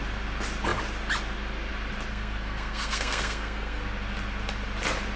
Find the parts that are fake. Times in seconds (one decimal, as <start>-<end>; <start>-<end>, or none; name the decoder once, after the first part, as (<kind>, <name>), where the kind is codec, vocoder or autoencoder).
2.1-3.8 (codec, SNAC)